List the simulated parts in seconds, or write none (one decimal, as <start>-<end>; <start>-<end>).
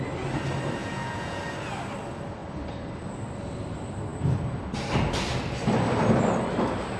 0.8-1.4